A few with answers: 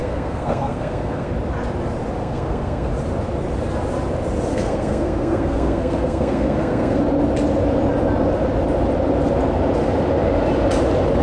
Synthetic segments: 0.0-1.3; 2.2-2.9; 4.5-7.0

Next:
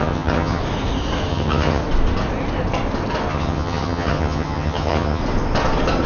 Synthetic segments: 0.0-0.6; 1.3-1.8; 3.3-5.2

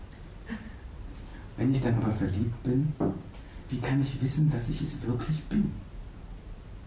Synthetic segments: none

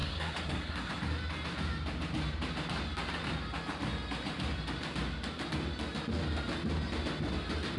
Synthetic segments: 0.0-0.9

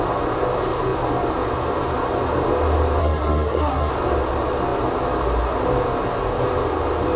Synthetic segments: 3.0-3.9

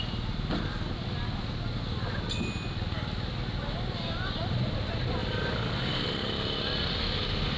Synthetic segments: 5.2-5.9

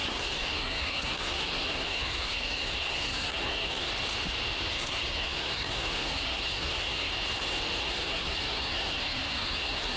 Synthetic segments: 0.0-3.9; 4.7-7.1; 7.8-10.0